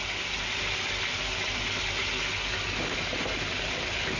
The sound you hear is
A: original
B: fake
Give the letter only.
A